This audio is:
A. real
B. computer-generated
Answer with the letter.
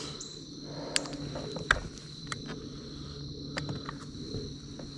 A